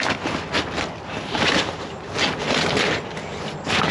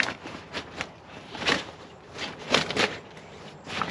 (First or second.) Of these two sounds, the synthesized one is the second